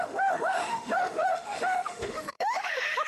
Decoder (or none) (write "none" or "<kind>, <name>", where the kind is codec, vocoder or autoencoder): autoencoder, DAC-VAE